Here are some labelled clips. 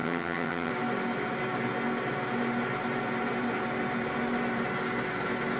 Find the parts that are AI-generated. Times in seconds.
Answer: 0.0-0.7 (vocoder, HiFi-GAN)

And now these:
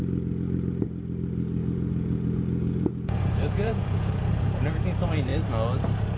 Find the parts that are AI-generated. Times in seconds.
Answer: 1.6-4.2 (vocoder, Vocos)

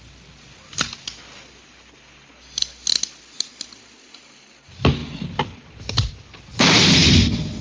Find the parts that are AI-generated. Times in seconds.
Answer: none

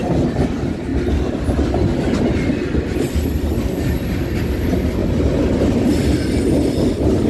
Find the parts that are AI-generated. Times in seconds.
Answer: 5.0-7.3 (vocoder, BigVGAN v2)

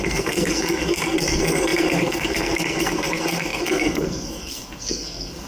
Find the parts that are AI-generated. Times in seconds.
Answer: 0.0-5.5 (codec, SNAC)

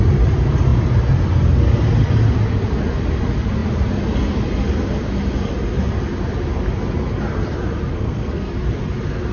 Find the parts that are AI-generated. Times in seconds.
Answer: 7.9-8.5 (codec, SNAC)

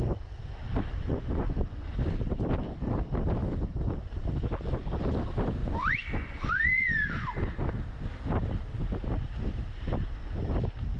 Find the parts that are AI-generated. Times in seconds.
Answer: 1.1-2.0 (vocoder, Vocos); 5.6-7.7

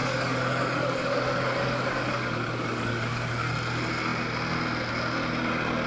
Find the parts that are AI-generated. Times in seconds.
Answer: 0.0-3.5 (codec, DAC)